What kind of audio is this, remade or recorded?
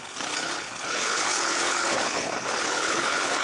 remade